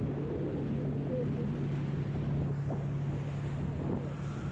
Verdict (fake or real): real